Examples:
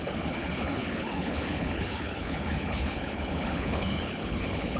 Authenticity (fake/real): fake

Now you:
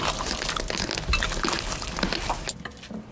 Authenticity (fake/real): real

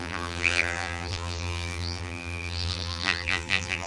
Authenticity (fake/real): fake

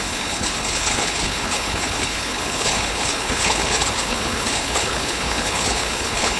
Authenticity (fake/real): fake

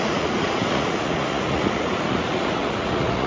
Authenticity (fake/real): fake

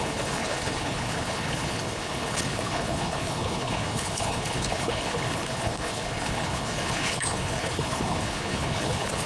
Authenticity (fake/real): fake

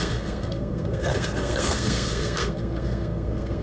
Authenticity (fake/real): fake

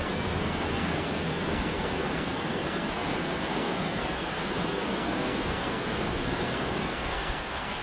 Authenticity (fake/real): fake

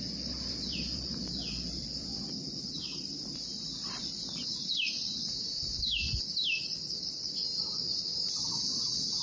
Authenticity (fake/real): fake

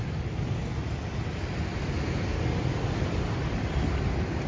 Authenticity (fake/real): real